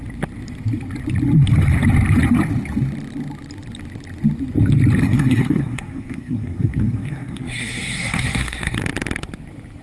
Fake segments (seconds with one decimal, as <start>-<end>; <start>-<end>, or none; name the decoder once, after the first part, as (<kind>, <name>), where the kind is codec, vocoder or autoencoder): 5.0-8.8 (codec, SNAC)